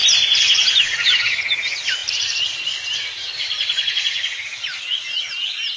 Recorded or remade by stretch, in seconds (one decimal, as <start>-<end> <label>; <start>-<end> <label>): 0.0-2.0 recorded; 2.0-4.8 remade; 4.8-5.8 recorded